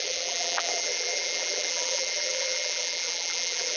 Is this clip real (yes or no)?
no